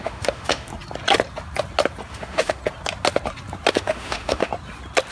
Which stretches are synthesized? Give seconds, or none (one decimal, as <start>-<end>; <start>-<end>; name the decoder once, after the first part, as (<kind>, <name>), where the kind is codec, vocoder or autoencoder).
0.0-0.7 (autoencoder, DAC-VAE); 2.1-2.6; 3.7-4.5